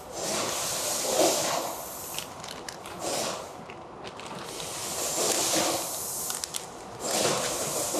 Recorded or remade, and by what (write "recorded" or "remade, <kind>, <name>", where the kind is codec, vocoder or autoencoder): recorded